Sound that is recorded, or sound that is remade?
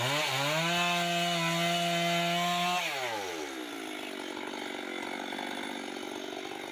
recorded